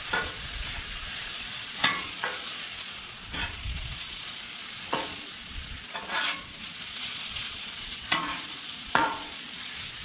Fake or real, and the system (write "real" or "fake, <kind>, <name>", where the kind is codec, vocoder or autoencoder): fake, vocoder, Vocos